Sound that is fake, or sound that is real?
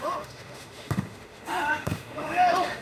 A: fake